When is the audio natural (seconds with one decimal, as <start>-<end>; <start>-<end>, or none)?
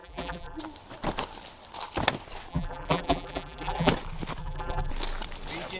0.6-2.5; 3.9-4.4; 4.9-5.8